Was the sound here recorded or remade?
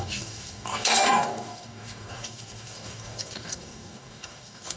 remade